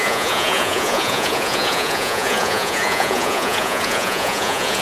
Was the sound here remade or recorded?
remade